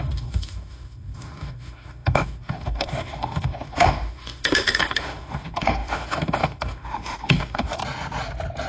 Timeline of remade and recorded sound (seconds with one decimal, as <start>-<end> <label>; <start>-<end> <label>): 0.0-7.8 remade; 7.8-8.7 recorded